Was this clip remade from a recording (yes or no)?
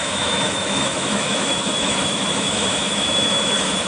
yes